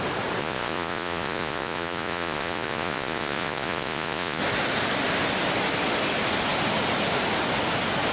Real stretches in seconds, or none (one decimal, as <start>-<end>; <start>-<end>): 0.0-0.4; 4.4-8.1

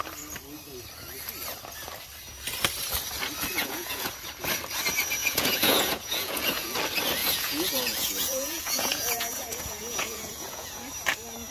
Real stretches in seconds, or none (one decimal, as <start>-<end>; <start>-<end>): 0.0-3.6; 4.1-5.2; 6.8-7.2; 10.8-11.5

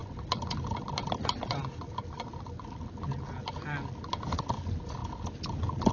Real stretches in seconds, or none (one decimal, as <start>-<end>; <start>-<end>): 0.0-5.9

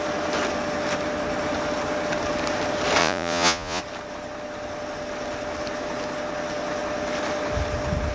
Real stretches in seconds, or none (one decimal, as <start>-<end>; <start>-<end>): 0.0-3.0; 3.8-8.1